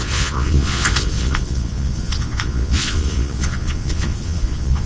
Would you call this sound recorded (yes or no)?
no